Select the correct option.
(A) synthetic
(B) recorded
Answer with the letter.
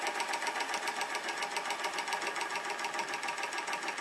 B